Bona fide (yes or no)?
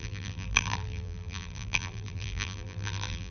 no